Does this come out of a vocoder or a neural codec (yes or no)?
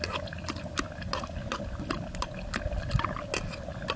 no